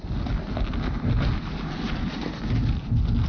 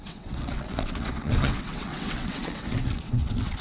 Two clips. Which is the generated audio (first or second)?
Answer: second